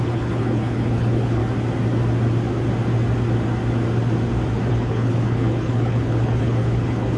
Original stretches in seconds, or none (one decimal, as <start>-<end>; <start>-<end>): 1.4-4.7